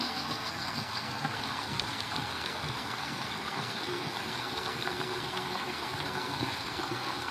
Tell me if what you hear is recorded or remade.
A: remade